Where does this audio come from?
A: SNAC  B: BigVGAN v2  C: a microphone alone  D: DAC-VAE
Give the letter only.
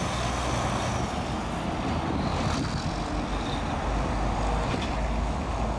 C